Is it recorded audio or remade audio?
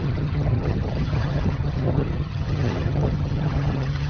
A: remade